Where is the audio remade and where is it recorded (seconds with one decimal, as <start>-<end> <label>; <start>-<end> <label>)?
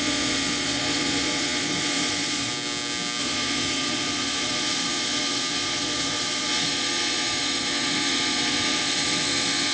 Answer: 0.0-2.5 remade; 2.5-3.2 recorded; 3.2-9.7 remade